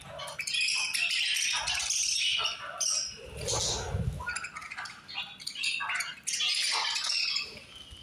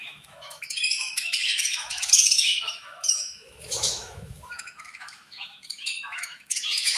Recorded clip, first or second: first